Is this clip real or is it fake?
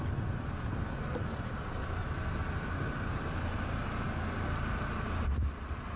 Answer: real